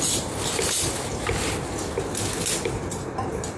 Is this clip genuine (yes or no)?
yes